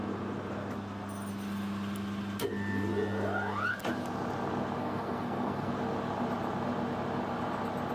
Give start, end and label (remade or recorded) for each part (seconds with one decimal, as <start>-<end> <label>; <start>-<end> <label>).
0.0-4.8 recorded; 4.8-5.7 remade; 5.7-7.9 recorded